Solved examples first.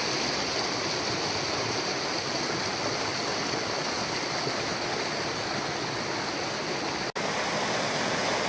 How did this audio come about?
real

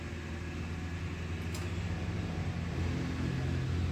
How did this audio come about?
real